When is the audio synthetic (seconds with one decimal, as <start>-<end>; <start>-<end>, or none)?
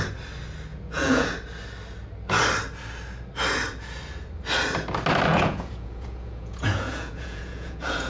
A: 0.7-1.3; 5.3-8.1